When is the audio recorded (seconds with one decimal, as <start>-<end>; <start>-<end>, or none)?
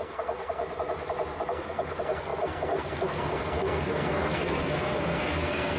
0.6-1.5